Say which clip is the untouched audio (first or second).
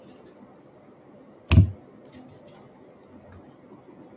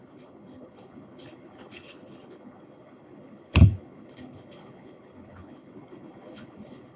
first